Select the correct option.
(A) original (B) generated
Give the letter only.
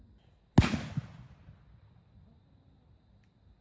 A